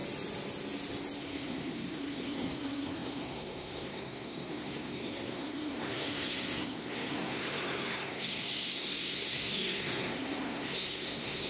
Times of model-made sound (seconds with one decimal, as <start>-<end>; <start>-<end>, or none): 1.2-11.5